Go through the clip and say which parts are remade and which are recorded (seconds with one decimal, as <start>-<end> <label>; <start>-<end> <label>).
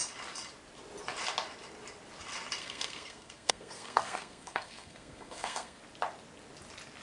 0.0-2.6 recorded; 2.6-5.8 remade; 5.8-7.0 recorded